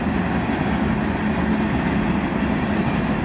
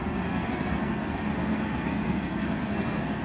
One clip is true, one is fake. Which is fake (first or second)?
second